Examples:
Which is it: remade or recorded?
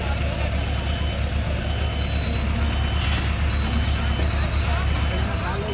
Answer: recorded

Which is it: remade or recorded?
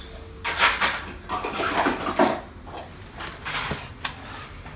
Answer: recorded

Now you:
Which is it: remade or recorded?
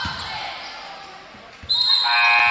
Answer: recorded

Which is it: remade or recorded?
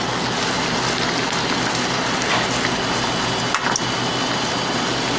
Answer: recorded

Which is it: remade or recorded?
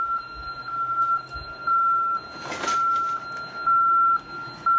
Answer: recorded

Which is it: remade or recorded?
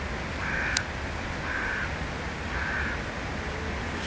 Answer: recorded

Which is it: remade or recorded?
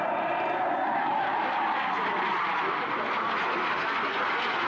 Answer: recorded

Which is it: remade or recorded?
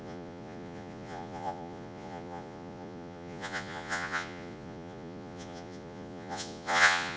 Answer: remade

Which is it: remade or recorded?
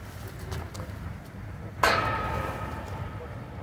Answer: recorded